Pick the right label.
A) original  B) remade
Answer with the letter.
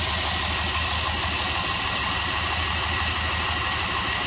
A